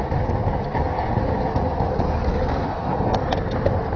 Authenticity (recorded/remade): recorded